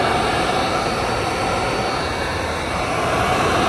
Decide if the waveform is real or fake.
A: real